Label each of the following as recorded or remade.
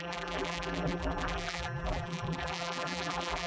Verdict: remade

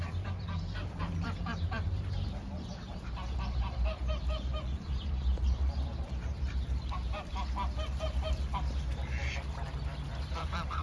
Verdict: remade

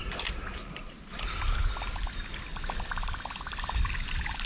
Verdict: recorded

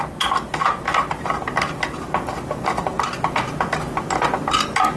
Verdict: recorded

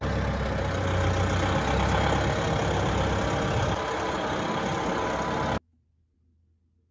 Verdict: recorded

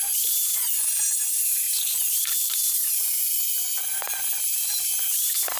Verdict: remade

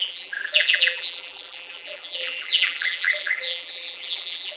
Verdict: remade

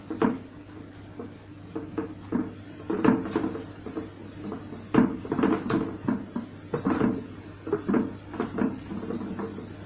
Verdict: recorded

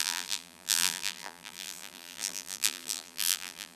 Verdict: remade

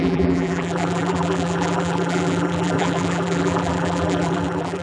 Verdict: remade